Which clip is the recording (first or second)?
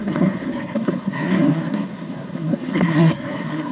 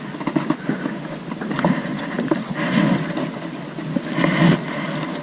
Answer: second